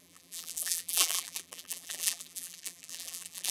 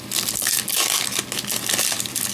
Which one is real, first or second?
second